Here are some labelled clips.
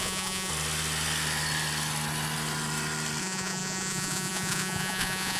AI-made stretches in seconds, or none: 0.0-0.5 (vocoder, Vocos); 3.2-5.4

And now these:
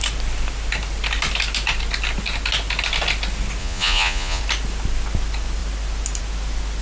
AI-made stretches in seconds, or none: 3.6-4.4 (vocoder, Vocos)

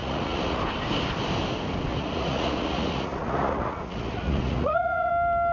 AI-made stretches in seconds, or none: 0.0-0.6 (vocoder, Vocos); 1.9-5.1

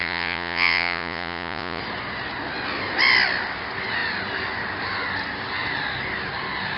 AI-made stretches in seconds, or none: 0.0-1.8 (vocoder, Vocos)

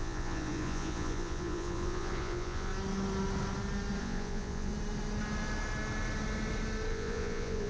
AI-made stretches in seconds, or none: 0.0-2.7 (vocoder, Vocos); 4.0-4.7; 6.9-7.7

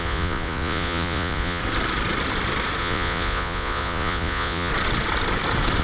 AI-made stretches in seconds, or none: 0.0-1.6 (vocoder, Vocos); 2.8-4.7

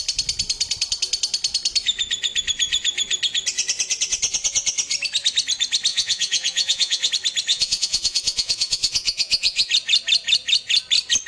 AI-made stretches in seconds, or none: 5.9-7.1 (vocoder, Vocos); 7.5-9.7